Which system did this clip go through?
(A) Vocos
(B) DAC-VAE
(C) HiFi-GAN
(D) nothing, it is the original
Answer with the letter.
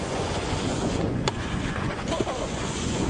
A